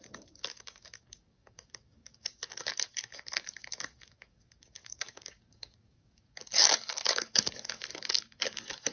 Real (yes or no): no